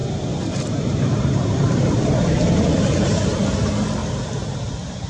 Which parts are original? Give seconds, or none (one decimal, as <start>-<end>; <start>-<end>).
3.1-4.0; 4.5-5.1